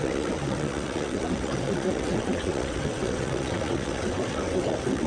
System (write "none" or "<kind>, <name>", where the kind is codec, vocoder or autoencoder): vocoder, WaveNeXt